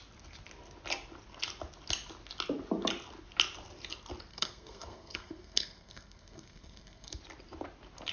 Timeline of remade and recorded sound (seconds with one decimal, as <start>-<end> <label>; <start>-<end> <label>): 0.0-4.3 recorded; 4.3-7.2 remade; 7.2-8.1 recorded